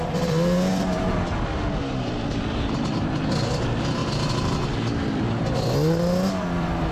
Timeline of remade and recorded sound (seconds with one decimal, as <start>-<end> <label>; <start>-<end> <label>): 0.0-1.3 remade; 1.3-1.9 recorded; 1.9-4.0 remade; 4.0-6.4 recorded; 6.4-6.9 remade